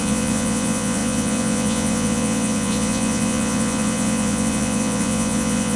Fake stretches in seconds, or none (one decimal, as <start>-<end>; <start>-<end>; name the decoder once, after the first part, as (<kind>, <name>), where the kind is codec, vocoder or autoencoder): 0.0-5.8 (vocoder, Vocos)